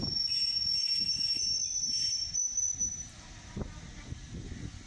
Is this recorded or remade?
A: recorded